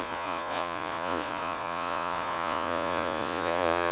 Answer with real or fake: fake